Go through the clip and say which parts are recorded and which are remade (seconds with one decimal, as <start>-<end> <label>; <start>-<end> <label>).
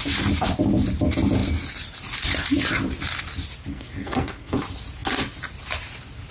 0.0-3.7 recorded; 3.7-4.6 remade; 4.6-6.3 recorded